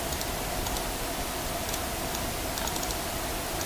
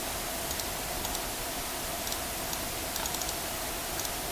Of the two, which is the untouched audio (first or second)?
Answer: second